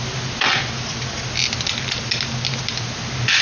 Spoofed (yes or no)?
no